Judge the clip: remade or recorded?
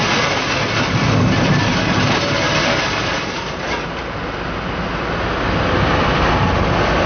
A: recorded